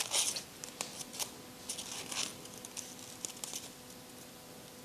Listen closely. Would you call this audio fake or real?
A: real